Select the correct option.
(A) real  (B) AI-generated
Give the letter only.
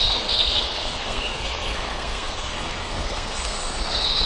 B